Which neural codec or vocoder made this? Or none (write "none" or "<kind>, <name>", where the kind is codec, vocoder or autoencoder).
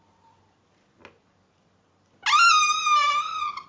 none